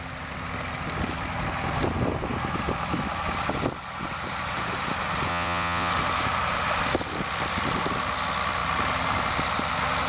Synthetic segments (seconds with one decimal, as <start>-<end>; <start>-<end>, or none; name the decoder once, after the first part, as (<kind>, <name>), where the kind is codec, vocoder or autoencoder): 5.3-5.9 (vocoder, WaveNeXt)